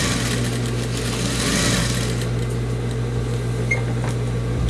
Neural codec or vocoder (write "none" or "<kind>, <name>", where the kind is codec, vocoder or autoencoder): none